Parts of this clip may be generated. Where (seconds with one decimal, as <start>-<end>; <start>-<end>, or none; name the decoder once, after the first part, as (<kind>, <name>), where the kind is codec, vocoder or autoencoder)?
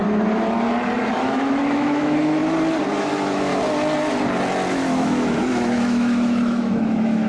1.1-2.4 (autoencoder, DAC-VAE); 3.0-3.5; 4.7-7.3